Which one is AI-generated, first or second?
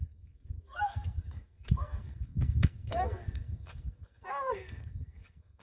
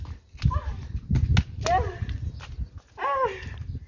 first